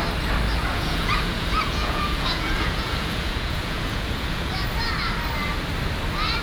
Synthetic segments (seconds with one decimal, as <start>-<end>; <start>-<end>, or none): 0.7-4.5